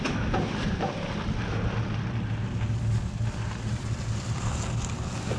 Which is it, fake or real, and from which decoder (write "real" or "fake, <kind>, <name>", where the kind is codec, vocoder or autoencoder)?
real